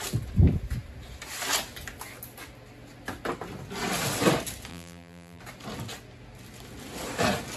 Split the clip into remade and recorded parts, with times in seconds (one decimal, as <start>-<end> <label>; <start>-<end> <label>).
0.0-4.7 recorded; 4.7-5.4 remade; 5.4-7.6 recorded